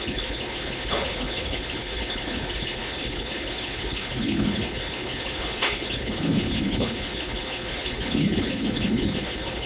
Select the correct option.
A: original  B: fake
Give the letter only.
B